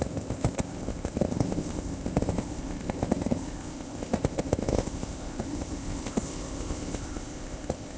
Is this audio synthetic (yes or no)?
yes